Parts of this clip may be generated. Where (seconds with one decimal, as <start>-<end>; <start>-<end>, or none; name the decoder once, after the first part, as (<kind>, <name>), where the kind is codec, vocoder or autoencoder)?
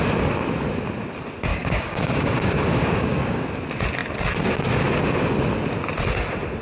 1.5-3.5 (codec, DAC)